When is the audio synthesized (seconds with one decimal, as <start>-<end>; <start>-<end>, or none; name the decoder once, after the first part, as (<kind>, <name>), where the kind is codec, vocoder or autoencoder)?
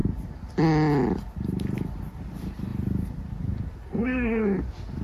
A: 3.8-4.6 (codec, SNAC)